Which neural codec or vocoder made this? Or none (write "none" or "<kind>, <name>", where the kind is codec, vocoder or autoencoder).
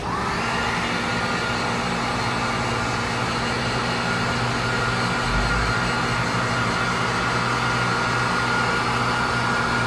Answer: none